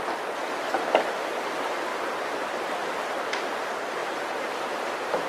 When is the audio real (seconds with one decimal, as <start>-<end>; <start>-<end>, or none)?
0.0-1.9; 3.2-4.0

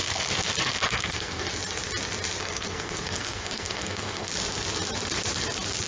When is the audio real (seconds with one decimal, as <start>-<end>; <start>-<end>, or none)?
0.0-0.6; 1.5-2.4; 4.3-5.9